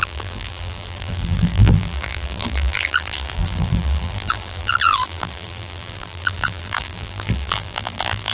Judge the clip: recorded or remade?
remade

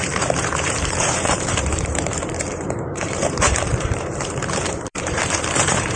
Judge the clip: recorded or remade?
remade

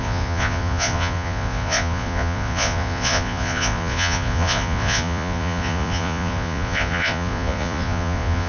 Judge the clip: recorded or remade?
remade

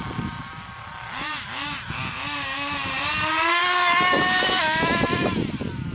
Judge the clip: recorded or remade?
recorded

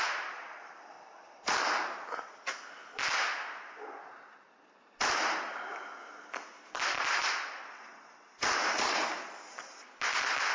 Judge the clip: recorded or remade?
recorded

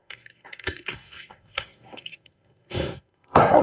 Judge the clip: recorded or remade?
remade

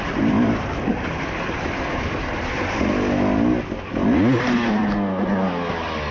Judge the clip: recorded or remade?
recorded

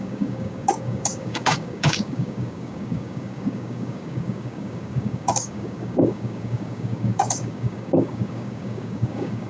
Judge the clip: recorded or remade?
remade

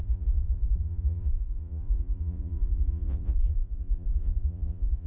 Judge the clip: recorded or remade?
remade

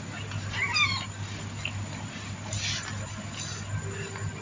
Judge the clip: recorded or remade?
recorded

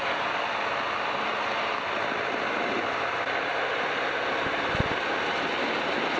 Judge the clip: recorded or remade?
recorded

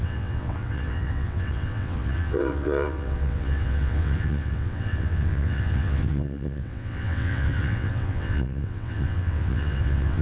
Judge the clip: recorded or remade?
remade